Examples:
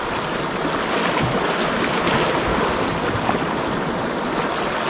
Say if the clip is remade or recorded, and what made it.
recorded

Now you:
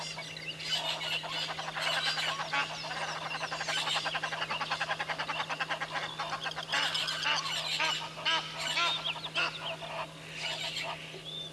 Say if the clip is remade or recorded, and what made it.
recorded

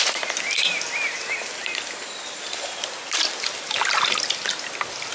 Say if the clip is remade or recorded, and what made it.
recorded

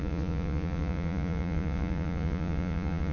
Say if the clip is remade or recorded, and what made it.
remade, vocoder, Vocos